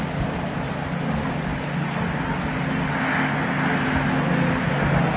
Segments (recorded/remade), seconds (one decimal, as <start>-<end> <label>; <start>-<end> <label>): 0.0-5.2 recorded